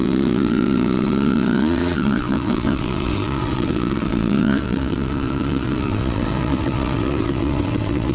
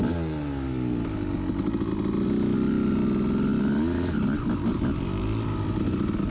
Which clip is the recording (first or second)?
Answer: second